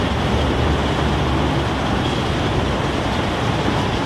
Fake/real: real